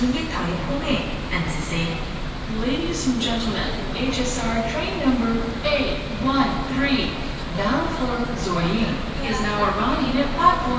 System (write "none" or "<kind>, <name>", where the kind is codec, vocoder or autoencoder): none